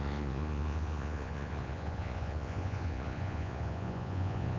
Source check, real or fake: fake